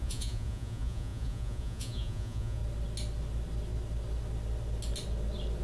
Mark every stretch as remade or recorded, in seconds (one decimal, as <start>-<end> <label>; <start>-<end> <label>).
0.0-2.6 remade; 2.6-5.6 recorded